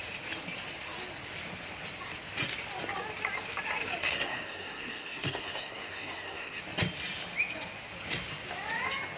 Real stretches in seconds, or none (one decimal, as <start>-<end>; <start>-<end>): 0.0-4.0; 6.6-9.2